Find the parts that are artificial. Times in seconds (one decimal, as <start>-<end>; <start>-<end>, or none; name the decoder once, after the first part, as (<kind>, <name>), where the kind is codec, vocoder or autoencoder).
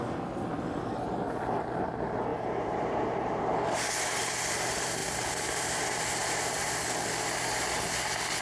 2.3-3.5 (vocoder, BigVGAN v2); 5.0-6.7